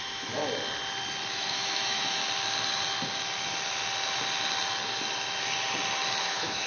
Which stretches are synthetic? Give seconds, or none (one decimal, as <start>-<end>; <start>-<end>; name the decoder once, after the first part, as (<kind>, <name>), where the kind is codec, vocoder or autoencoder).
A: 0.0-0.4 (autoencoder, DAC-VAE); 1.3-2.2; 6.2-6.7